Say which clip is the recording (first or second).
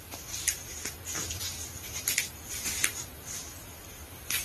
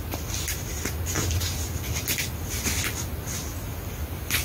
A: second